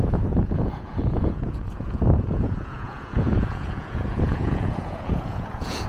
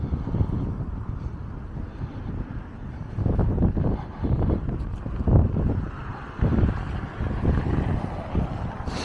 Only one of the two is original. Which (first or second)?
second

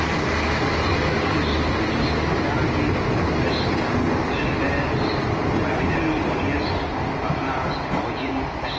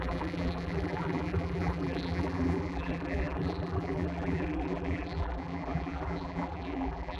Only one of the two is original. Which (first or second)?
first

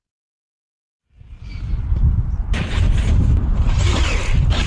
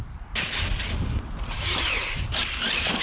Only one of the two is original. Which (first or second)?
second